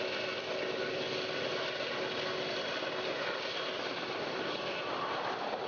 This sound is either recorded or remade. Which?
recorded